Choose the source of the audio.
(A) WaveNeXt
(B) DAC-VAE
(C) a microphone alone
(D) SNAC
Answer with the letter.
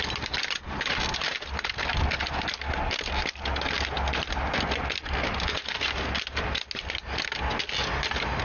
C